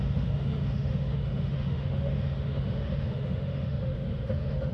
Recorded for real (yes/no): no